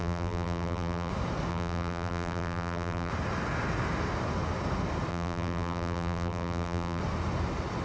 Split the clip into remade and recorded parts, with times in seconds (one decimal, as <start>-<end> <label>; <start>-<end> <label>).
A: 0.0-1.1 remade; 1.1-1.5 recorded; 1.5-3.1 remade; 3.1-5.1 recorded; 5.1-7.0 remade; 7.0-7.8 recorded